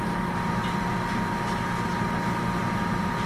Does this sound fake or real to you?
real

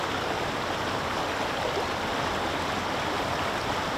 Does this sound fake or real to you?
real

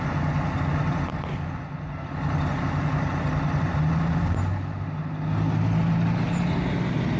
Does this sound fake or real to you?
real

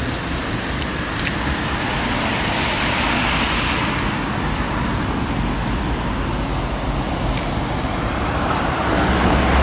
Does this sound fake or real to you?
real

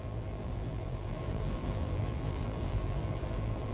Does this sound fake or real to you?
fake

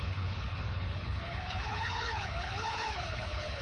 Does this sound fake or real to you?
fake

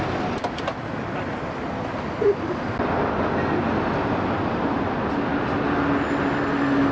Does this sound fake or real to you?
real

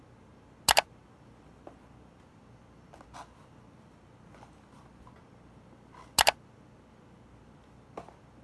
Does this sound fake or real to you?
real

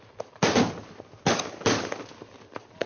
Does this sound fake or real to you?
real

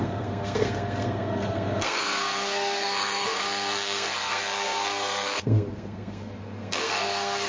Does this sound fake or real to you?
fake